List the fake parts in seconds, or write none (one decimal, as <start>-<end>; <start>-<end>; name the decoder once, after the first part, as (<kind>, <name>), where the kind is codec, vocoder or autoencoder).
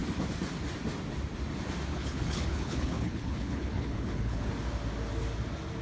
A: 1.9-4.5 (codec, HILCodec)